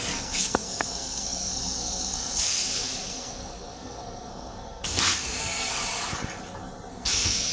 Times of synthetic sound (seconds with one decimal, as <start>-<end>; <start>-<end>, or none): 0.0-5.8; 6.9-7.5